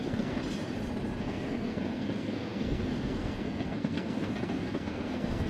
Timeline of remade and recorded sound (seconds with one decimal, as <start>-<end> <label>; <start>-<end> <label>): 0.0-0.4 remade; 0.4-1.2 recorded; 1.2-5.5 remade